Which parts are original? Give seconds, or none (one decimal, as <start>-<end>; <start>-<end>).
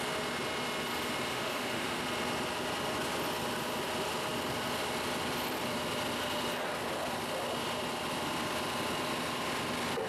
0.0-1.3; 2.0-10.1